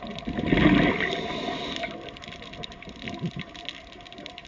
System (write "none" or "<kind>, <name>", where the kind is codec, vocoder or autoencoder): none